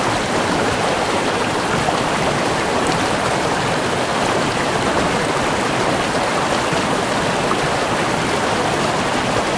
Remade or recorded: recorded